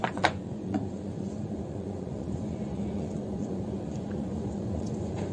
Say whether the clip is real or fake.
fake